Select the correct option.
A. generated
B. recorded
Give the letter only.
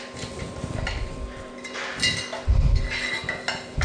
B